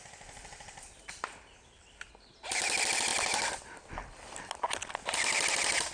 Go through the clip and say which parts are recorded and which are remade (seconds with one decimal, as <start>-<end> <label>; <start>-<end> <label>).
0.0-5.9 recorded